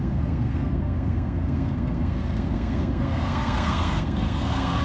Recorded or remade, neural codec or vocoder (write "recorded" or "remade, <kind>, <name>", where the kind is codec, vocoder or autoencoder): remade, codec, SNAC